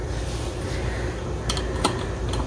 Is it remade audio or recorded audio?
recorded